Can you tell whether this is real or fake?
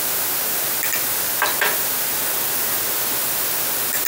real